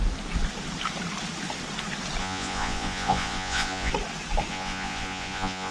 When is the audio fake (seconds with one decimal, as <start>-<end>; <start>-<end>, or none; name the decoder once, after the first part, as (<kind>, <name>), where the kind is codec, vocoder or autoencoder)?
2.2-3.9 (vocoder, Vocos); 4.5-5.7